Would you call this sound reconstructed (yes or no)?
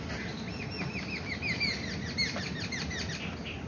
no